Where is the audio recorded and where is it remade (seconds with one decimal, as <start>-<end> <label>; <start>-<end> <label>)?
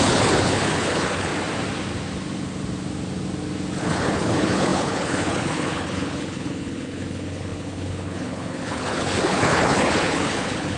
0.0-1.3 remade; 1.3-3.8 recorded; 3.8-10.8 remade